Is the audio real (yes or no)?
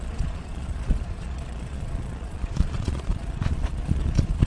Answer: no